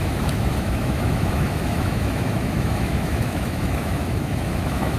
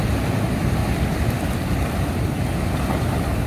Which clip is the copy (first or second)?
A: first